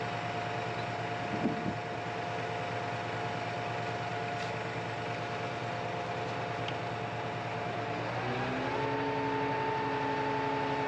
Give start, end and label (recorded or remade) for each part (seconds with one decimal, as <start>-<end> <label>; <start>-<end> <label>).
0.0-10.9 recorded